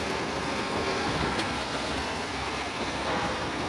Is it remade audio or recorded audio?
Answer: remade